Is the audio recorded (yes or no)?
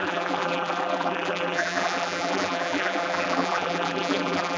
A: no